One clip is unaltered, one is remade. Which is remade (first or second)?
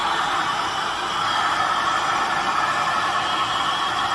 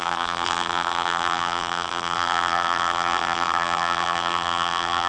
second